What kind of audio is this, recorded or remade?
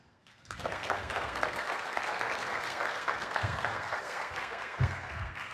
remade